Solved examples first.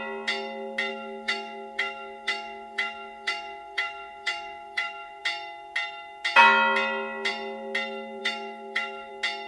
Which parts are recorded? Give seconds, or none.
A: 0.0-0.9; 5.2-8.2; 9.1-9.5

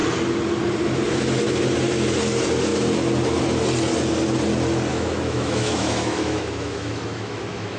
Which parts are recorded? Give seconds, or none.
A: 0.0-4.9

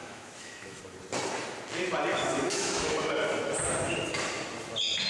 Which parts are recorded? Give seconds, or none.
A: 0.8-2.1; 3.1-5.1

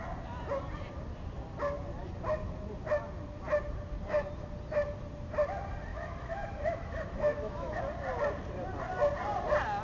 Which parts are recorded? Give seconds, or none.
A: 0.0-5.9; 7.8-9.8

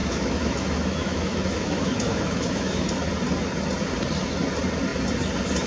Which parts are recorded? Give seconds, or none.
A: 2.9-5.7

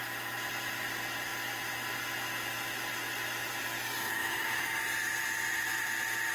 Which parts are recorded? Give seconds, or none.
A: 0.0-4.2; 4.8-6.3